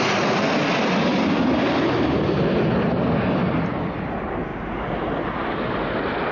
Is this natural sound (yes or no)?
yes